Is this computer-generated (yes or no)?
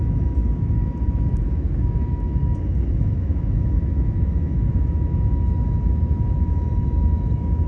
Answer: yes